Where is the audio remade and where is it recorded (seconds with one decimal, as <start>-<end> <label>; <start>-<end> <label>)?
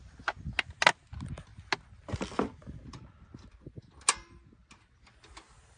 0.0-5.8 recorded